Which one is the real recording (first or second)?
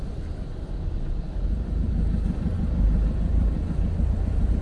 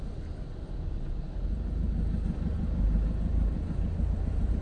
second